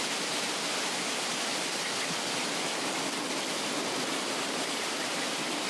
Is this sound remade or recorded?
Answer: recorded